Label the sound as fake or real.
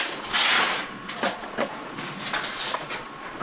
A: fake